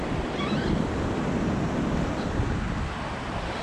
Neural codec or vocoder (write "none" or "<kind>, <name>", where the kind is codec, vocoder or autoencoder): none